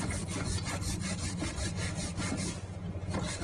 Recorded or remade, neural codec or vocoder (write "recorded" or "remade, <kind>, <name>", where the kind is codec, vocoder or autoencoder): remade, vocoder, Vocos